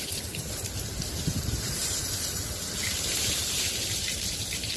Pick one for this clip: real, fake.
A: fake